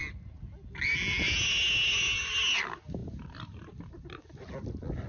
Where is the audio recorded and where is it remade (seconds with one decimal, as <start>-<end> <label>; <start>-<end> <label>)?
0.0-5.1 recorded